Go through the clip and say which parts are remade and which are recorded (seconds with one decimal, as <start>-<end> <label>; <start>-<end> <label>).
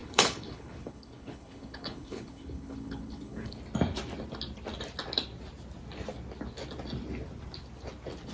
0.0-3.6 remade; 3.6-8.3 recorded